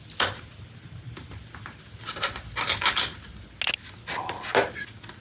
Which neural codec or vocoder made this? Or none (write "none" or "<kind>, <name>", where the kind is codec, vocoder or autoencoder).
none